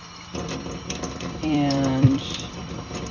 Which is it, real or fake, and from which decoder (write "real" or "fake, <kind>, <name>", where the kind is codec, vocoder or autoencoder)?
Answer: fake, vocoder, BigVGAN v2